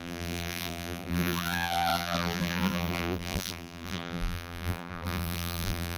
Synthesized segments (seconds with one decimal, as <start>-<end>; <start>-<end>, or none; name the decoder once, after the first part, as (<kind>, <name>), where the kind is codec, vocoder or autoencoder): 0.0-6.0 (vocoder, BigVGAN v2)